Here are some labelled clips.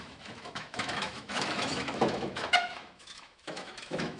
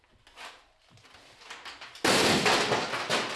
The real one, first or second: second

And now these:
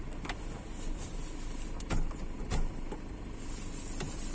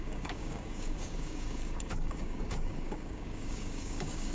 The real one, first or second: first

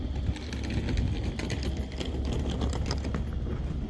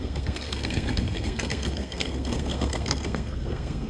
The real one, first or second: first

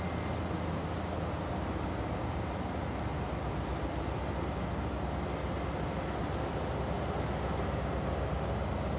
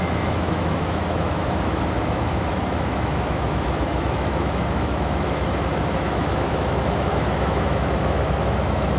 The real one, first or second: first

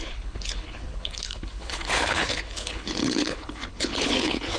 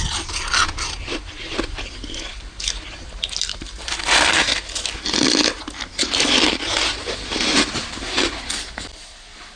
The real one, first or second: second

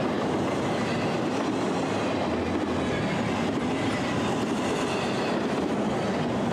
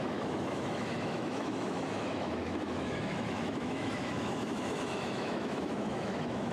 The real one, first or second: first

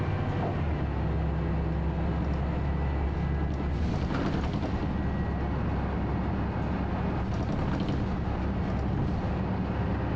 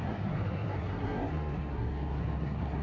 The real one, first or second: first